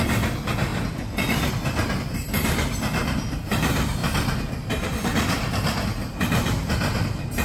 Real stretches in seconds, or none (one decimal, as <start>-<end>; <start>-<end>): 0.0-7.4